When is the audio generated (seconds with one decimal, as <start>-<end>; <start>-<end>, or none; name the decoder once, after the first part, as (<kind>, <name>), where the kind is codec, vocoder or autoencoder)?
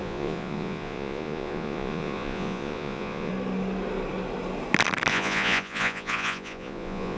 0.0-3.3 (vocoder, Vocos); 5.1-7.2